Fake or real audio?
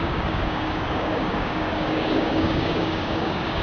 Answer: fake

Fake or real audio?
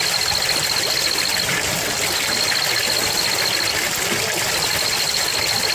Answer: real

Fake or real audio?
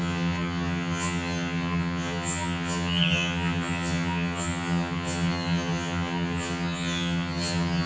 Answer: fake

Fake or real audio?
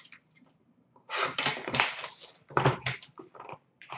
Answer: fake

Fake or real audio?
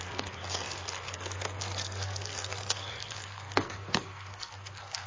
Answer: fake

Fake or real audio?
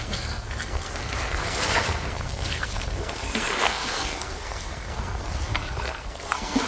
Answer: fake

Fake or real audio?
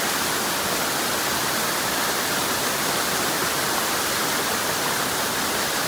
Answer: real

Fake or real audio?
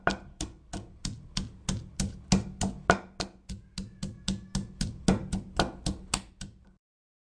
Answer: real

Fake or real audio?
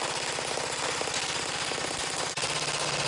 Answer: real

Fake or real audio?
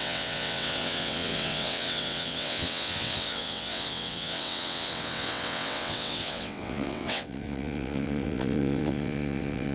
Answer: fake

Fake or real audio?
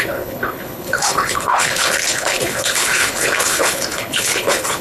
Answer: fake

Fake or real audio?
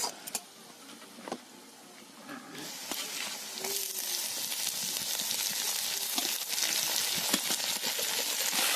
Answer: real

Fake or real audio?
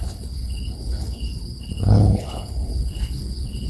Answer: fake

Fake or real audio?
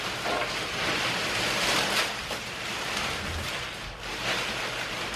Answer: real